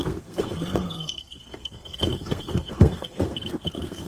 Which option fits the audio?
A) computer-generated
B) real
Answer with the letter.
A